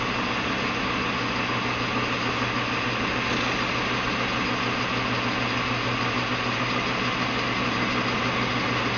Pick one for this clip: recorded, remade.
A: recorded